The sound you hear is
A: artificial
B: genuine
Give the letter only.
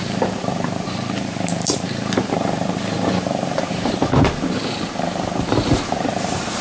A